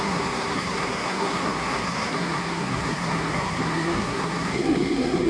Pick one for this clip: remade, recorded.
remade